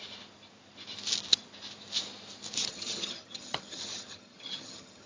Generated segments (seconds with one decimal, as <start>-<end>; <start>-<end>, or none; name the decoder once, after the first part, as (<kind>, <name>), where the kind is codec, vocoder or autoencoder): 2.7-5.1 (vocoder, HiFi-GAN)